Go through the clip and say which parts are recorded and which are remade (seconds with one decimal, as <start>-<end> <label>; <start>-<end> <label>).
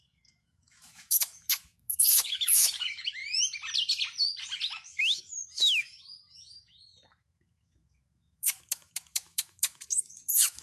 0.0-3.2 remade; 3.2-4.7 recorded; 4.7-10.6 remade